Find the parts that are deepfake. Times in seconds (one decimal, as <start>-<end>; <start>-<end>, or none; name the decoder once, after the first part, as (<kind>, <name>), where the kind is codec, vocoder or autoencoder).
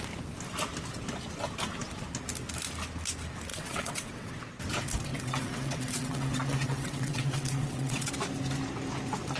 3.5-4.3 (vocoder, WaveNeXt); 5.1-8.1